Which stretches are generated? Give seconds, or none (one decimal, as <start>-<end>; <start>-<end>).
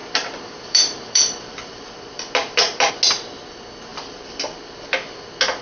0.0-2.9; 3.9-4.4